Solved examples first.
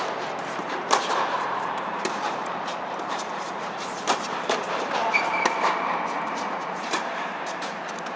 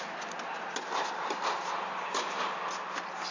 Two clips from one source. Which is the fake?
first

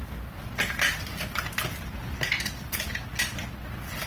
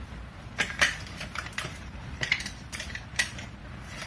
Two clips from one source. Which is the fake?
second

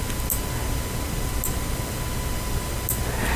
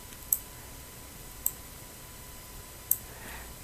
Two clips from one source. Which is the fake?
second